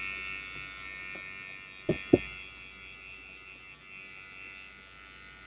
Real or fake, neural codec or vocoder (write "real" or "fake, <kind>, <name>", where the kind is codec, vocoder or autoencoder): real